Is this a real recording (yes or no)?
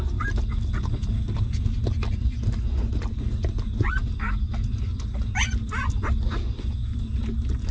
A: yes